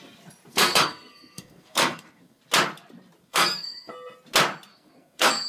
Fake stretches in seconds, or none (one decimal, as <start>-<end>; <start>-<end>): 0.5-2.4; 3.2-3.9; 4.7-5.5